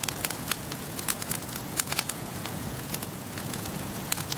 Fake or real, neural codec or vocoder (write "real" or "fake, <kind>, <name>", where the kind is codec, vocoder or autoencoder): fake, vocoder, Vocos